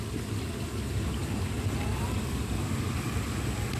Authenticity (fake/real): real